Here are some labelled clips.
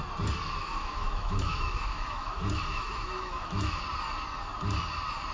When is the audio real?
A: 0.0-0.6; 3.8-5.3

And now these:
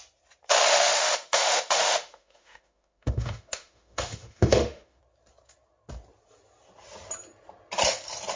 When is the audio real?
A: 0.0-0.7; 5.0-8.4

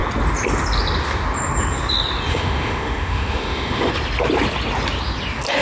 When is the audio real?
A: 0.0-2.3; 3.9-5.6

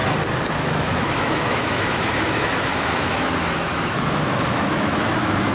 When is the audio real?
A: 0.0-0.5

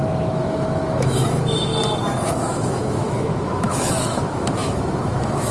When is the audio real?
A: 1.7-2.3

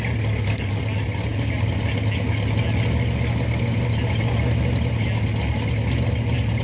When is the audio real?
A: 0.0-6.6

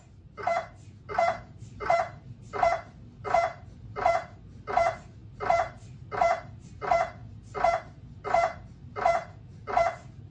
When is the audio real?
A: 0.0-10.3